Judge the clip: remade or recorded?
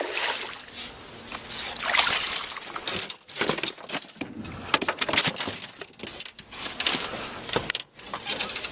recorded